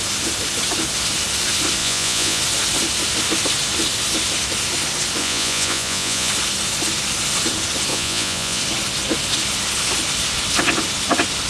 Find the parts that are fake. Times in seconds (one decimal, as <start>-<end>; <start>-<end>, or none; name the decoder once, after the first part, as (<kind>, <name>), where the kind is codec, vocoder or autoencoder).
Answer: 1.8-2.4 (vocoder, Vocos); 5.2-6.3; 7.9-8.6